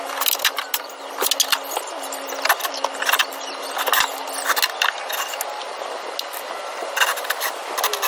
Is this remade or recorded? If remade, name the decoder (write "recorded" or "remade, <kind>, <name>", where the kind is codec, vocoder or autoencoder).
recorded